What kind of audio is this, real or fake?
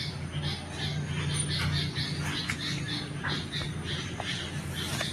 real